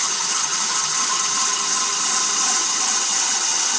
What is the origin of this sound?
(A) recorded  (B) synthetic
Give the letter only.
B